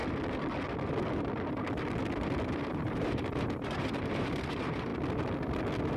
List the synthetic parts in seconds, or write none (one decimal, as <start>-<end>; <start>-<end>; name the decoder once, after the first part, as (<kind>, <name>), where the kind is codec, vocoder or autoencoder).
2.7-4.9 (vocoder, BigVGAN v2)